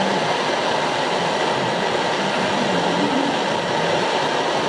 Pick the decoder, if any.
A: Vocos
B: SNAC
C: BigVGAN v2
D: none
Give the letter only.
D